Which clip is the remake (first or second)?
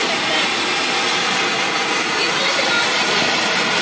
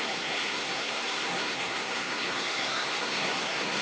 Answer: second